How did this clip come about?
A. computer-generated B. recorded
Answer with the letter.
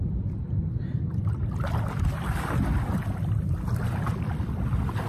B